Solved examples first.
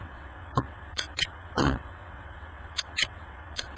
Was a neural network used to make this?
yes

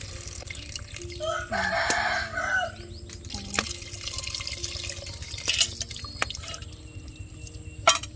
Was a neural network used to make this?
no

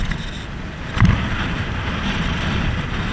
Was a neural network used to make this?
no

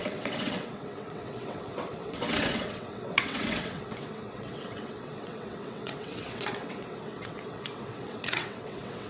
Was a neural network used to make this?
yes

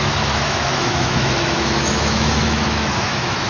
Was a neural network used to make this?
yes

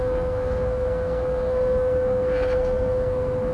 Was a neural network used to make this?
yes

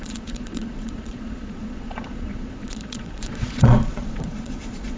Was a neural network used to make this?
yes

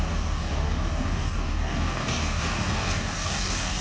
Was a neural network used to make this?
yes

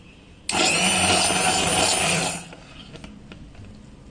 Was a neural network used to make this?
no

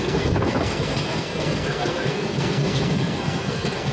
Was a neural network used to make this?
yes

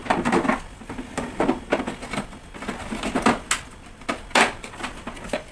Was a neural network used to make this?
no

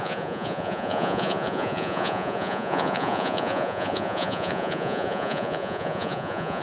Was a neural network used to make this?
yes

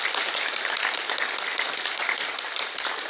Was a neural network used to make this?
no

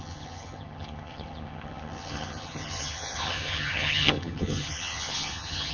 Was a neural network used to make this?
yes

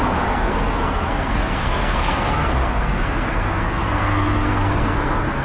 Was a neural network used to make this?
yes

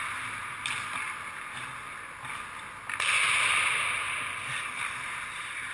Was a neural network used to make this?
no